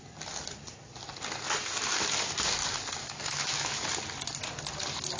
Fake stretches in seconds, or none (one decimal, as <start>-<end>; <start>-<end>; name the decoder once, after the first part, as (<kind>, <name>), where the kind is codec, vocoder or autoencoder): 3.0-3.8 (autoencoder, DAC-VAE)